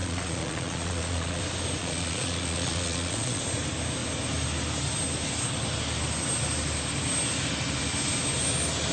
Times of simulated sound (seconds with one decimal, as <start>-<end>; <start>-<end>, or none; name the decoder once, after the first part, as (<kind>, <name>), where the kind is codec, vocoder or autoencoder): 0.0-1.4 (vocoder, Vocos); 1.8-3.4